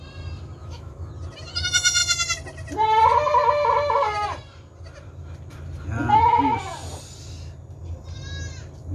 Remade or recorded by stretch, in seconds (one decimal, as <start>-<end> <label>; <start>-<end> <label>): 0.0-0.6 recorded; 0.6-1.1 remade; 1.1-8.9 recorded